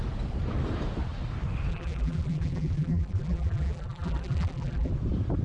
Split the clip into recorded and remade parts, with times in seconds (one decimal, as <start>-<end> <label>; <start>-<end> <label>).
0.0-1.7 recorded; 1.7-4.9 remade; 4.9-5.4 recorded

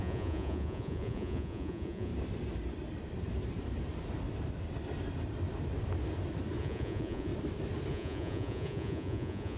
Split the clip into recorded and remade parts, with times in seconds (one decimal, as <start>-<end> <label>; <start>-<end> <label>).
0.0-2.1 remade; 2.1-6.6 recorded; 6.6-7.3 remade; 7.3-7.9 recorded; 7.9-9.6 remade

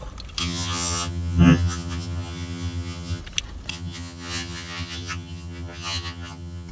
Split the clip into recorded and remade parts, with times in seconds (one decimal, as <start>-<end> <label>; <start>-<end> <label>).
0.0-0.4 recorded; 0.4-3.2 remade; 3.2-3.7 recorded; 3.7-6.7 remade

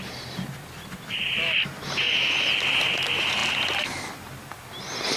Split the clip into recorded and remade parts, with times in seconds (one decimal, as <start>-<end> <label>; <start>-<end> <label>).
0.0-5.2 recorded

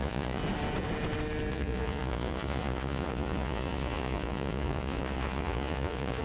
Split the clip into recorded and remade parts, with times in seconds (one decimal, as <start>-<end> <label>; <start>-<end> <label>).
0.0-0.4 remade; 0.4-1.5 recorded; 1.5-6.2 remade